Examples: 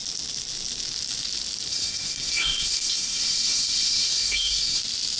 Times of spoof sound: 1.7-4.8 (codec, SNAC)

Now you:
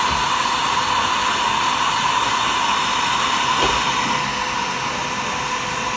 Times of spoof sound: none

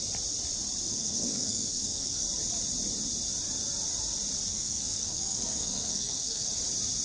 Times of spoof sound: 0.9-2.2 (codec, SNAC); 4.5-6.5

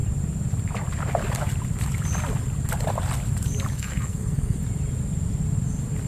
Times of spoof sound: 3.7-4.6 (codec, SNAC)

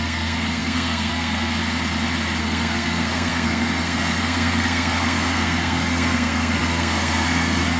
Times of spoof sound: 0.0-1.6 (codec, SNAC); 2.4-7.8

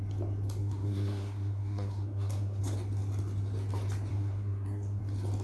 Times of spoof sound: 0.6-2.6 (codec, SNAC); 4.1-5.0